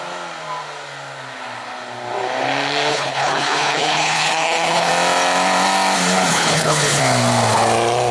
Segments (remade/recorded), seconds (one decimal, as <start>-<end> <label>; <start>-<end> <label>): 0.0-2.9 recorded; 2.9-4.9 remade; 4.9-6.3 recorded; 6.3-7.0 remade; 7.0-8.1 recorded